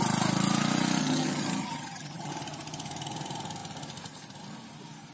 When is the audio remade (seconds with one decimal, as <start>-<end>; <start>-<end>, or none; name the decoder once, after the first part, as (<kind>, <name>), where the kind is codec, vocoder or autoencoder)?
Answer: 1.0-2.3 (vocoder, HiFi-GAN)